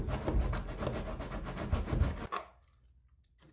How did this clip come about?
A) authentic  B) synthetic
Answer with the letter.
A